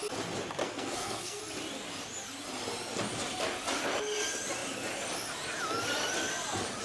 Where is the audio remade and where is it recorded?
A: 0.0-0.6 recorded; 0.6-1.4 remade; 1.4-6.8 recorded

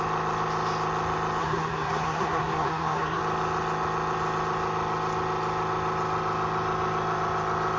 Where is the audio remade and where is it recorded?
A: 0.0-1.4 recorded; 1.4-3.2 remade; 3.2-7.8 recorded

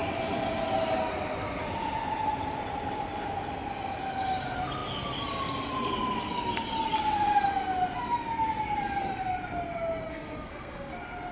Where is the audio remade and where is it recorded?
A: 0.0-10.1 recorded; 10.1-10.9 remade; 10.9-11.3 recorded

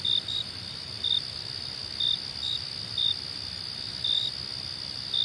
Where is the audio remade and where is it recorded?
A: 0.0-5.2 recorded

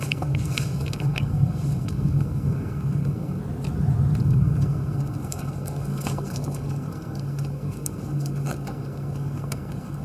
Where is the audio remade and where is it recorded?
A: 0.0-3.4 remade; 3.4-4.2 recorded; 4.2-10.0 remade

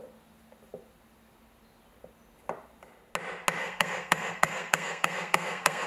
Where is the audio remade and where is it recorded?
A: 0.0-3.6 recorded; 3.6-5.9 remade